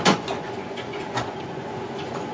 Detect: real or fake fake